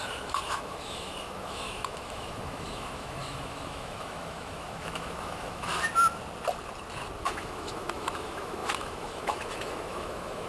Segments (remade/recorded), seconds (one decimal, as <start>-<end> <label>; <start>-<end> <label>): 0.0-5.7 remade; 5.7-7.2 recorded; 7.2-10.5 remade